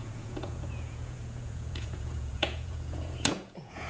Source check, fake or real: fake